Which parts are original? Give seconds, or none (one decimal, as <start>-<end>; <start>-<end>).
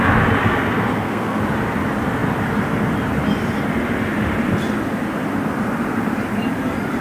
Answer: 0.0-0.4; 1.4-7.0